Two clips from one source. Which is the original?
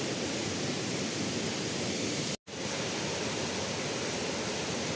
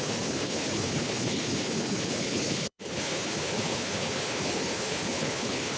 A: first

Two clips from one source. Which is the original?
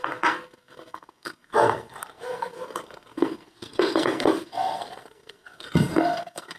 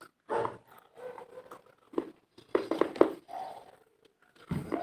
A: second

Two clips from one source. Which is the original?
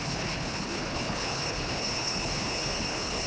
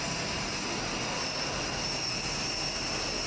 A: second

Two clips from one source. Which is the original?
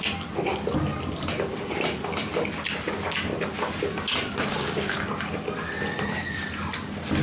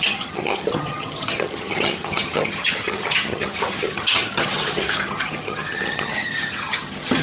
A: first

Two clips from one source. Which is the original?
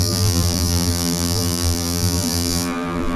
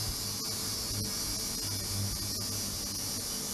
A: second